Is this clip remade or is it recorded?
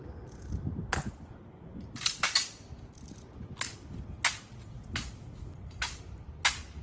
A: recorded